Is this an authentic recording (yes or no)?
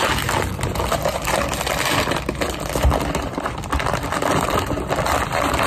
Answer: yes